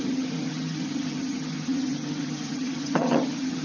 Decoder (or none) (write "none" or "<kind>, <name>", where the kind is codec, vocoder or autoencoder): vocoder, HiFi-GAN